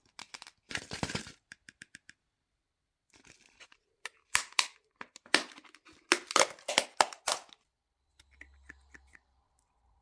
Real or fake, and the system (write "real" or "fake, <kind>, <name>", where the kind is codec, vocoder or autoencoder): fake, vocoder, BigVGAN v2